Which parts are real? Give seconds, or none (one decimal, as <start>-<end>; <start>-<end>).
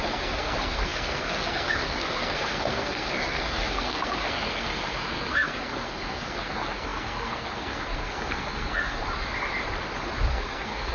9.0-10.3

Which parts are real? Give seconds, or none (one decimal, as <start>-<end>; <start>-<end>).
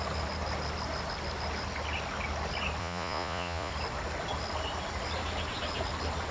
0.0-2.8; 3.7-6.3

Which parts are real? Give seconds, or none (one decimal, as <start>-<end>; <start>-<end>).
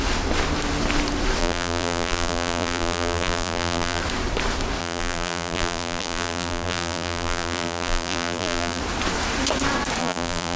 0.0-1.4; 4.0-4.8; 8.8-10.0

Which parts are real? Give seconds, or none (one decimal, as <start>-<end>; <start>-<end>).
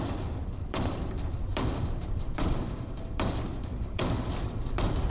0.0-0.4; 1.0-1.5; 4.0-5.1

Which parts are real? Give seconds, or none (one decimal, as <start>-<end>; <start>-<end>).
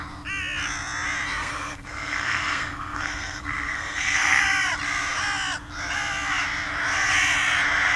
0.0-1.4; 4.4-8.0